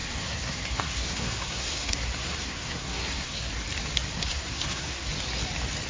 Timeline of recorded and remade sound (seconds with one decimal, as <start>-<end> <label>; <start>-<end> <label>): 0.0-3.5 remade; 3.5-4.1 recorded; 4.1-5.1 remade; 5.1-5.9 recorded